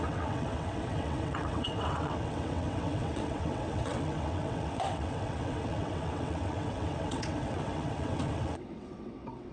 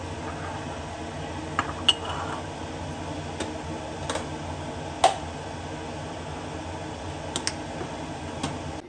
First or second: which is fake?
first